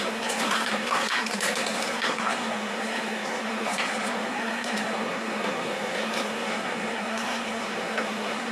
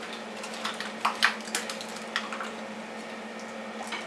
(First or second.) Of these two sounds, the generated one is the first